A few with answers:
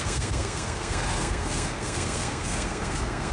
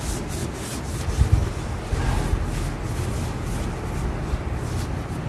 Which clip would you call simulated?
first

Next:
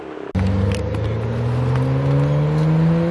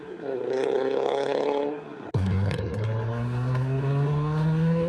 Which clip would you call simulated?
second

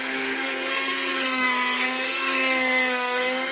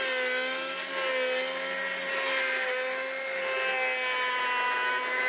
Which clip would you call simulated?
first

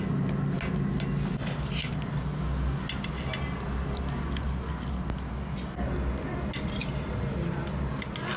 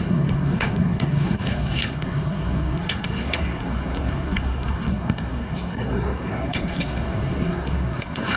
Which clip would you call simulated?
second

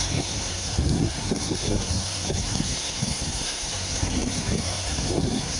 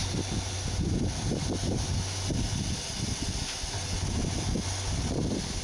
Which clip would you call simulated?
first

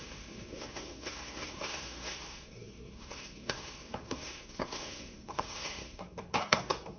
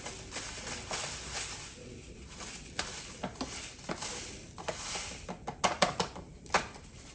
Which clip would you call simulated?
first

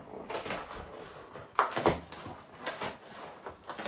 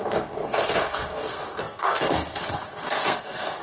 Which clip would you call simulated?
second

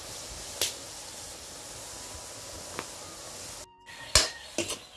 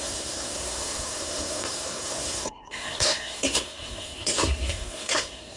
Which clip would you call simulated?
second